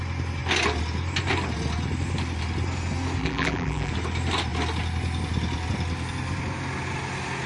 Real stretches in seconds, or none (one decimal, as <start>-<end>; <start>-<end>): 0.0-3.2; 3.9-7.5